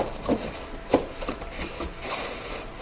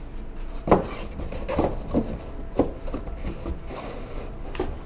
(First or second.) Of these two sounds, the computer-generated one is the first